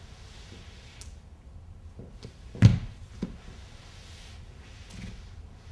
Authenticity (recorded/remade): recorded